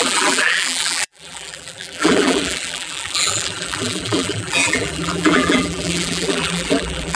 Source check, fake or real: fake